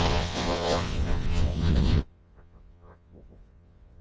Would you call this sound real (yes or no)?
no